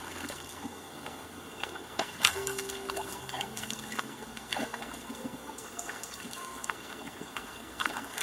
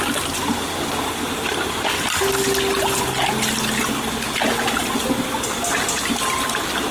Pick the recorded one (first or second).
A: second